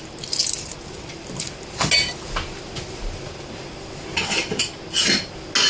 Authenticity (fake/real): real